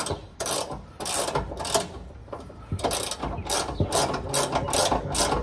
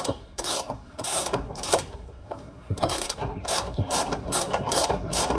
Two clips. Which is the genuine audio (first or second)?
first